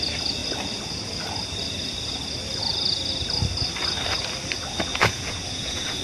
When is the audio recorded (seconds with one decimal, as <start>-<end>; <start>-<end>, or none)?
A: 0.0-4.9